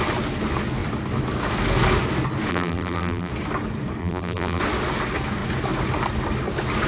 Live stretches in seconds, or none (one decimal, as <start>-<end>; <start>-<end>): 0.0-2.5; 3.3-4.0; 4.6-6.9